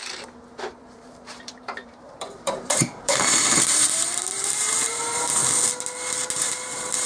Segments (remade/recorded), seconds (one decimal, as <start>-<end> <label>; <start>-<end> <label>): 0.0-0.6 recorded; 0.6-5.4 remade; 5.4-6.4 recorded; 6.4-7.1 remade